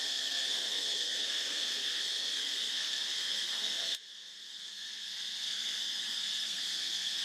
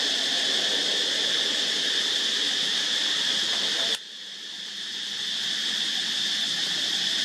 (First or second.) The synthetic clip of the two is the first